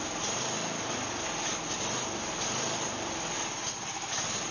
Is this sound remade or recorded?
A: recorded